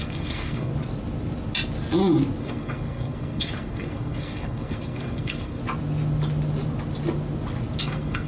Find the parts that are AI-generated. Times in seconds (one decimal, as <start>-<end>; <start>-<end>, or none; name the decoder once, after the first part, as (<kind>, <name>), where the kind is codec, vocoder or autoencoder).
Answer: 0.0-0.7 (codec, SNAC); 2.4-5.6; 7.8-8.3